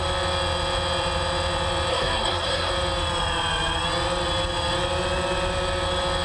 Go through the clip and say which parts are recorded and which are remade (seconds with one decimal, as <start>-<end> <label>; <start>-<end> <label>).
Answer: 0.0-1.9 recorded; 1.9-2.7 remade; 2.7-6.2 recorded